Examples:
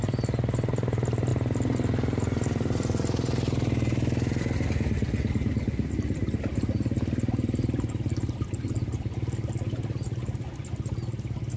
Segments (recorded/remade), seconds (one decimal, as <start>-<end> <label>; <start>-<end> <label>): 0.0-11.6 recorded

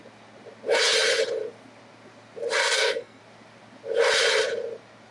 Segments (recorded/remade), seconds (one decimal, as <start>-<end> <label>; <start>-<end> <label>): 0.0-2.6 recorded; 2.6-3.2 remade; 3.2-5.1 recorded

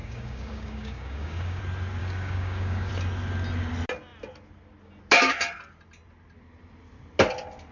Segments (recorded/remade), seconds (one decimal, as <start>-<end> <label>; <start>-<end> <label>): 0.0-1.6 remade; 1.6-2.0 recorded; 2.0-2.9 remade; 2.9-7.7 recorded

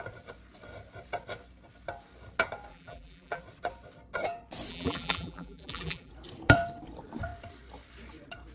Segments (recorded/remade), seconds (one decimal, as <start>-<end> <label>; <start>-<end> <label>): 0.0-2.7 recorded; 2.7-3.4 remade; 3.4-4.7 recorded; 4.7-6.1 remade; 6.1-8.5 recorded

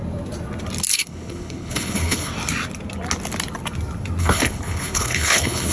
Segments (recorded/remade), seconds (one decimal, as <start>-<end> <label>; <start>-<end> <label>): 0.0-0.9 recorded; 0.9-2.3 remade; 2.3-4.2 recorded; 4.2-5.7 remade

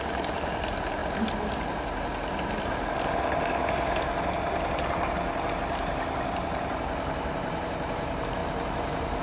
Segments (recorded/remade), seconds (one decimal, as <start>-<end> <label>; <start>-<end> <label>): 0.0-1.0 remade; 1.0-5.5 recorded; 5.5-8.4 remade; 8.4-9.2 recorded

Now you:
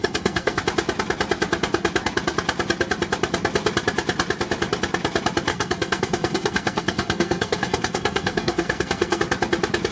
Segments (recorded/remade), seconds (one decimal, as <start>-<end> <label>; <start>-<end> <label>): 0.0-0.6 remade; 0.6-5.5 recorded; 5.5-9.2 remade; 9.2-9.9 recorded

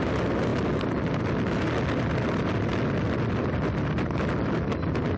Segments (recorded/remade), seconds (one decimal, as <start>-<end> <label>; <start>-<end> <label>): 0.0-5.2 recorded